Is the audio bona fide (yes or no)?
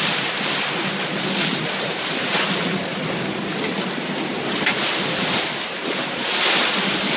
yes